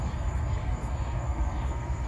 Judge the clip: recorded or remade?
remade